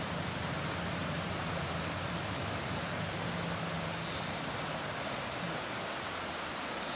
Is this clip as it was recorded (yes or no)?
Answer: yes